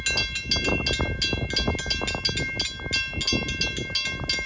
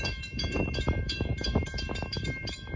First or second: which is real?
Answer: first